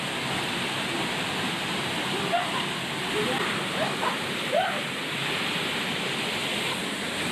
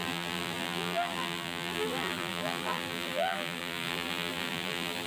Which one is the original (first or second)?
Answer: first